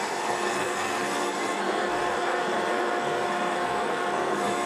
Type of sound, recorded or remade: remade